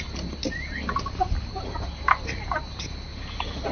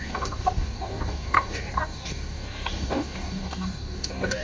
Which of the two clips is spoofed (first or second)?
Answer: second